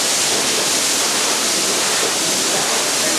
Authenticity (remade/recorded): recorded